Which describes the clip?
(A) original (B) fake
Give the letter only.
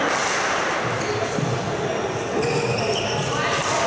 A